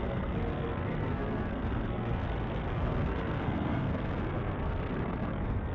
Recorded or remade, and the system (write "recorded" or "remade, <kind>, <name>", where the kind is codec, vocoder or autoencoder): remade, codec, SNAC